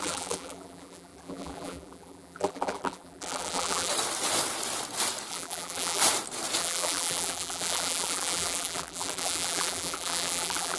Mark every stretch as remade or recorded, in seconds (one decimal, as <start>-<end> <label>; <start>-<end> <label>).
0.0-3.9 remade; 3.9-5.3 recorded; 5.3-6.0 remade; 6.0-6.6 recorded; 6.6-10.8 remade

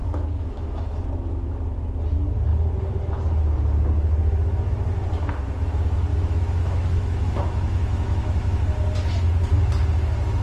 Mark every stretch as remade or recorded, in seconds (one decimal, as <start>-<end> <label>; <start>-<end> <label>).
0.0-1.1 remade; 1.1-6.1 recorded; 6.1-8.6 remade; 8.6-10.4 recorded

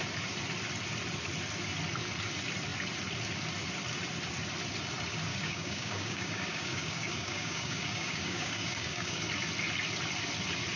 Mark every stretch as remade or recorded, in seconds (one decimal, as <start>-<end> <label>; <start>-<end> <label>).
0.0-5.3 recorded; 5.3-9.2 remade; 9.2-10.8 recorded